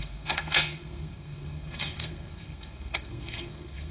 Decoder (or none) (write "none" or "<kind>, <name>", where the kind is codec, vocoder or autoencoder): codec, SNAC